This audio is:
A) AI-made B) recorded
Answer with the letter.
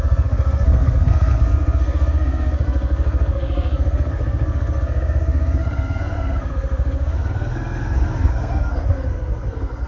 A